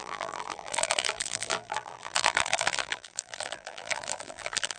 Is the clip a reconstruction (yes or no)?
yes